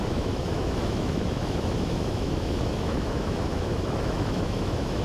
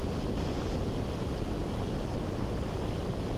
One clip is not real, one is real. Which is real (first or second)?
second